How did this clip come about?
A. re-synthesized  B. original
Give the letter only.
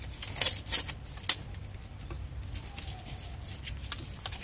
B